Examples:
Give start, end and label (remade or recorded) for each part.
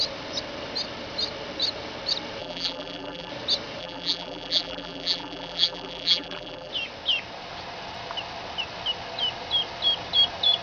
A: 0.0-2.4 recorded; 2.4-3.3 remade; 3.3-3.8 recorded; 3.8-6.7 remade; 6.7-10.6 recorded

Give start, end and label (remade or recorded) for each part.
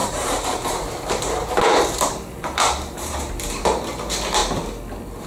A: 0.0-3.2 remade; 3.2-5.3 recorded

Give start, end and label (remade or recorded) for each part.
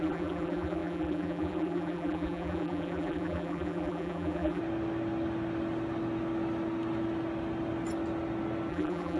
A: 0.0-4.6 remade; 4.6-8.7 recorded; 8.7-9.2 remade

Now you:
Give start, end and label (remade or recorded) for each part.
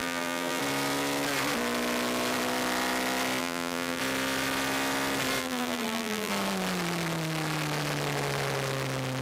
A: 0.0-0.6 remade; 0.6-3.4 recorded; 3.4-4.0 remade; 4.0-5.4 recorded; 5.4-6.3 remade; 6.3-9.2 recorded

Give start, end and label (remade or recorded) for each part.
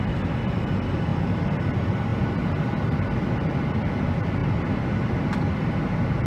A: 0.0-4.4 recorded; 4.4-5.7 remade; 5.7-6.3 recorded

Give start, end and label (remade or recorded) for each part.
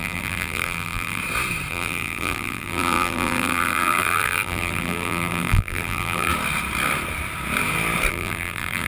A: 0.0-1.2 remade; 1.2-1.7 recorded; 1.7-6.3 remade; 6.3-8.1 recorded; 8.1-8.9 remade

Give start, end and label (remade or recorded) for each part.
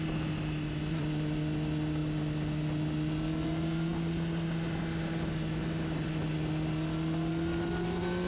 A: 0.0-8.3 recorded